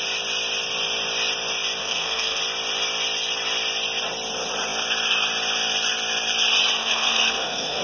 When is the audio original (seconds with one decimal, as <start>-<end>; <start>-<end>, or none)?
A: 0.0-1.8; 2.4-6.8